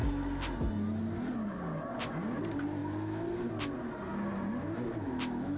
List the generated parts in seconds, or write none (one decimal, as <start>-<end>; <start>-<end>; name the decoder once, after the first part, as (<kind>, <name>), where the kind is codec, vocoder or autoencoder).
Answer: none